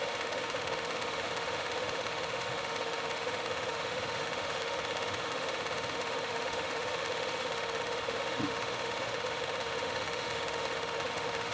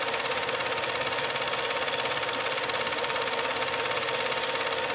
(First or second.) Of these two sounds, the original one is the second